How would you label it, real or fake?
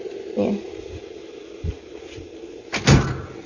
real